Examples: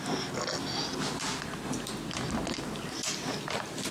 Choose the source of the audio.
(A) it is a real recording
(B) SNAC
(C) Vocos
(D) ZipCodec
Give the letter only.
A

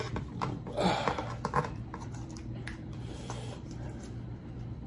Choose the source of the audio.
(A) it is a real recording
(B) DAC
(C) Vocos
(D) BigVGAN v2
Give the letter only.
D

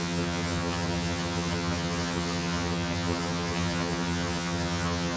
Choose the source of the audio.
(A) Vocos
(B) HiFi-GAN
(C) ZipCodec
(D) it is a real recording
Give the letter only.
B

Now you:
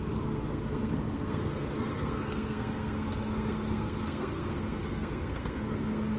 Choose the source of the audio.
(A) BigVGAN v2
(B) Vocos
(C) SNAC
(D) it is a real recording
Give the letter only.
C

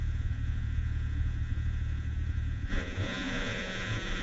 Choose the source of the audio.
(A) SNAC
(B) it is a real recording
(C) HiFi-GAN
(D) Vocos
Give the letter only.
D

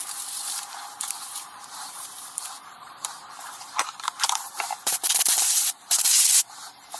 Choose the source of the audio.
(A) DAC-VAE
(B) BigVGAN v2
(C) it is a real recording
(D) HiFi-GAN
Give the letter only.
B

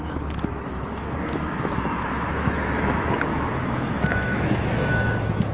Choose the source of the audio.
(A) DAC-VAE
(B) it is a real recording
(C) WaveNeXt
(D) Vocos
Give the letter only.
A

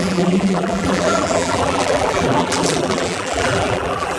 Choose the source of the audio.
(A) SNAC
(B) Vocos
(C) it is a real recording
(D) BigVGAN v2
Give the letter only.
D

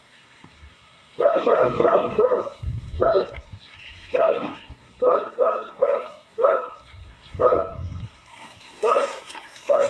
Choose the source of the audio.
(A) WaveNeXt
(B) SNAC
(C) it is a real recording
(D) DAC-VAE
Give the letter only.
B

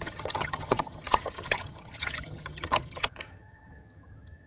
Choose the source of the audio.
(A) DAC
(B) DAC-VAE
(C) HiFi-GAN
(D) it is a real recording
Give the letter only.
C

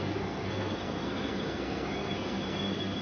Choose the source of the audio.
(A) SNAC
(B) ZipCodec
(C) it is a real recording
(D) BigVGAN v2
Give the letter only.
A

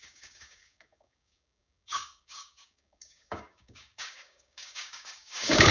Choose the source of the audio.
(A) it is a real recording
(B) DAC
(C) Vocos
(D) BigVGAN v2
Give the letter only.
B